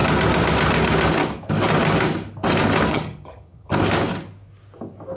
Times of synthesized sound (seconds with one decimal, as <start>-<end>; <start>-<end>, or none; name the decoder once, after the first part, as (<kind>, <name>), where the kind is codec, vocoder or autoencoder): 2.9-3.7 (vocoder, HiFi-GAN)